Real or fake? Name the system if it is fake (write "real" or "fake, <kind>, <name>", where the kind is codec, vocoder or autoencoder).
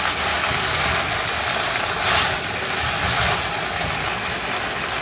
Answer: real